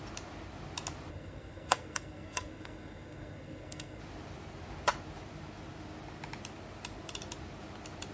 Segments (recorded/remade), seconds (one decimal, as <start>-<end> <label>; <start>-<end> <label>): 0.0-1.1 recorded; 1.1-4.0 remade; 4.0-8.1 recorded